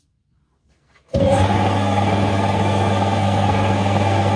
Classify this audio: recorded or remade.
remade